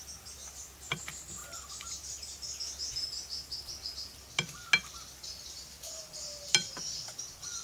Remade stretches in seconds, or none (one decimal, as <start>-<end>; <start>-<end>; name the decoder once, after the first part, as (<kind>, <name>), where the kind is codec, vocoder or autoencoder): none

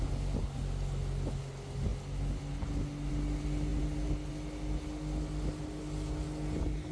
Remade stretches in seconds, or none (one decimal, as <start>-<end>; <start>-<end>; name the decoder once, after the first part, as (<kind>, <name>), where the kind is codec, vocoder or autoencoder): none